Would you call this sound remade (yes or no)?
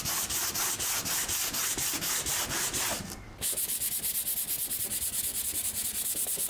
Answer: no